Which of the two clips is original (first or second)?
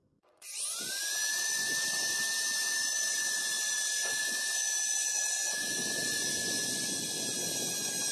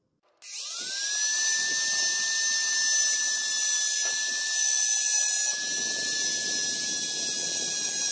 second